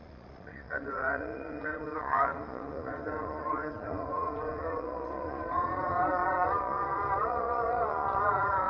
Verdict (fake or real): fake